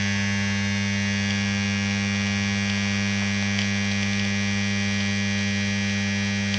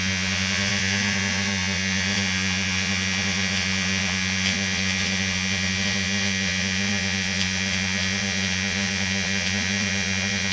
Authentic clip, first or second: first